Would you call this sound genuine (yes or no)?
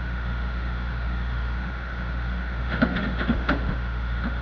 no